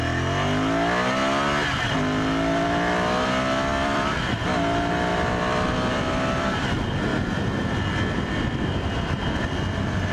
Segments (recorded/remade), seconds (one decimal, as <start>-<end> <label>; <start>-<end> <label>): 0.0-3.7 recorded; 3.7-4.2 remade; 4.2-5.1 recorded; 5.1-6.0 remade; 6.0-7.1 recorded; 7.1-8.7 remade; 8.7-10.1 recorded